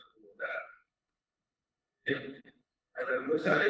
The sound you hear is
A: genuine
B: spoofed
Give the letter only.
B